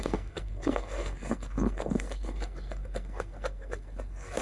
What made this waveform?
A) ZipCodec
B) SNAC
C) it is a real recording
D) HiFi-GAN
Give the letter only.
B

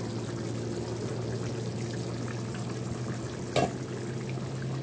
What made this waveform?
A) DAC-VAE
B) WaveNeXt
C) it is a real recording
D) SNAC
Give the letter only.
C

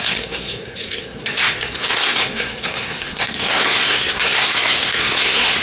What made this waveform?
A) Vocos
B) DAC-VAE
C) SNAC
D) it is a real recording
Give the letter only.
C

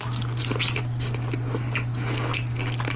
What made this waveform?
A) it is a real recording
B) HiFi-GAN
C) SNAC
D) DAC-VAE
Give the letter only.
A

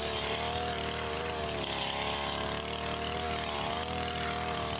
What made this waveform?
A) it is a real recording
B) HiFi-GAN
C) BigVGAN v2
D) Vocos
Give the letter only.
A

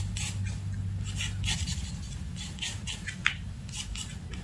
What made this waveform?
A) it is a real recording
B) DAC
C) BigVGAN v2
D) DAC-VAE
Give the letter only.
A